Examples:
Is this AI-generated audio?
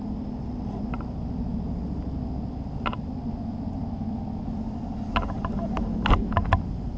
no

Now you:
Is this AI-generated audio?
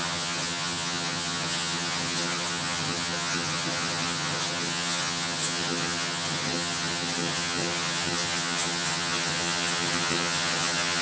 yes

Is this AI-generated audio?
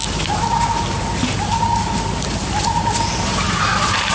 no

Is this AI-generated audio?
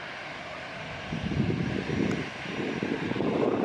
no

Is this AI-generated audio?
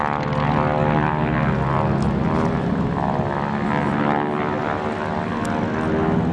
no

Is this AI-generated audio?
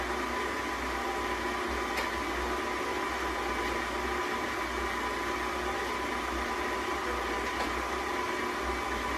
no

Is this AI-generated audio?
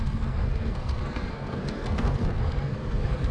yes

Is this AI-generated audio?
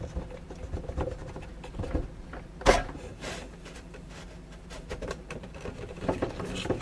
yes